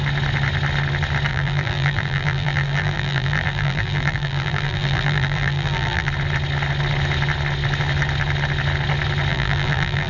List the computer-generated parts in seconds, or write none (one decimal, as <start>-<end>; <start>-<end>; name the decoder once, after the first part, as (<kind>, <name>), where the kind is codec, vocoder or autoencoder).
1.3-6.1 (vocoder, BigVGAN v2); 9.3-10.1